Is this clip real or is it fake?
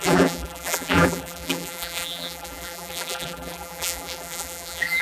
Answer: fake